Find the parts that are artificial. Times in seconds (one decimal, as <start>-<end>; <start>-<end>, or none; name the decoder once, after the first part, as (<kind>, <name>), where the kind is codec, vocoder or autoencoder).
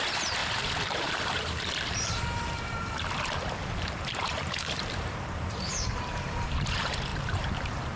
0.0-8.0 (vocoder, BigVGAN v2)